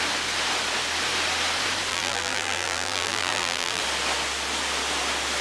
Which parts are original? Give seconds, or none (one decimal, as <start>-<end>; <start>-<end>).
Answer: 0.0-1.9; 3.8-5.4